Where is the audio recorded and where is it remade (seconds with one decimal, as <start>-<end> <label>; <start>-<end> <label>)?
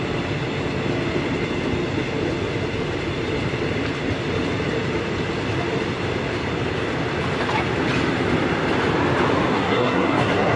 0.0-9.5 recorded; 9.5-10.6 remade